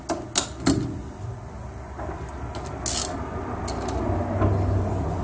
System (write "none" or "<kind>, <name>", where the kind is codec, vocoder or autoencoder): none